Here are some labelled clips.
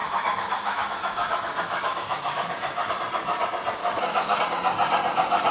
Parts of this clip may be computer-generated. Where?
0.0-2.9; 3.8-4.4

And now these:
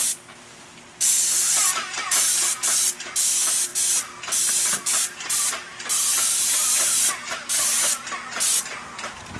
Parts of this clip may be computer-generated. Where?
none

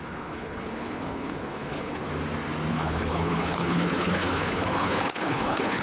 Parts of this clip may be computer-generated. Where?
0.0-2.1; 2.7-5.8

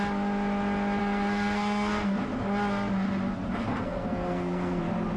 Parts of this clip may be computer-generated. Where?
1.0-2.2; 3.7-4.8

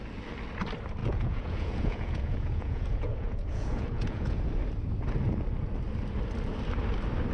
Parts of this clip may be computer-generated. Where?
1.0-4.4

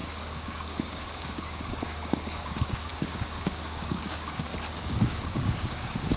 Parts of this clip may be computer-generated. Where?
0.0-4.5; 5.0-6.2

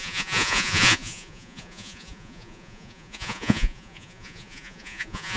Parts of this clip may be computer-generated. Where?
0.0-5.4

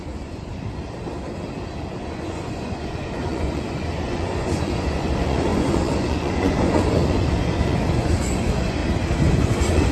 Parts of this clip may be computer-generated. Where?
0.0-0.5; 2.0-8.8; 9.3-9.9